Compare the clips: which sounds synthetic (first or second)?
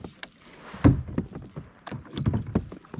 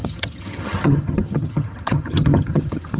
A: second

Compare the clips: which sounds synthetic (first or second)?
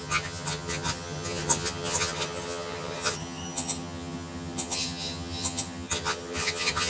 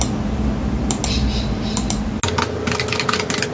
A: first